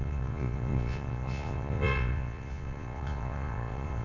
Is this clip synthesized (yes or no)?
yes